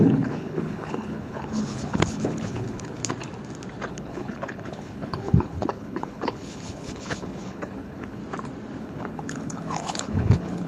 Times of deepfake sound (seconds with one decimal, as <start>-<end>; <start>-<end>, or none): 0.0-3.0; 3.9-8.2; 8.8-10.7

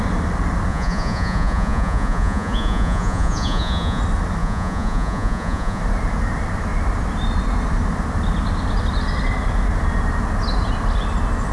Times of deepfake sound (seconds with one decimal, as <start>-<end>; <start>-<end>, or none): 0.7-4.0; 4.4-5.8

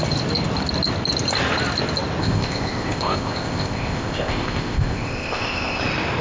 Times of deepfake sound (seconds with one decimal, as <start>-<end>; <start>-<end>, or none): 2.2-5.8

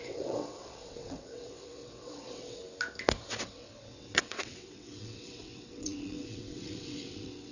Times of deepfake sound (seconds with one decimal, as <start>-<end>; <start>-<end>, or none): 0.0-2.6; 3.4-7.5

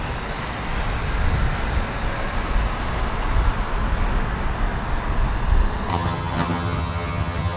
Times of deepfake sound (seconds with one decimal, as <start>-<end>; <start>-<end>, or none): 5.9-7.6